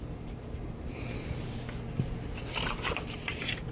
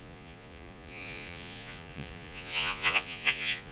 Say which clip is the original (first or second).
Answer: first